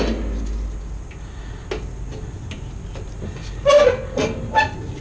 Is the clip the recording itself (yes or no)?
yes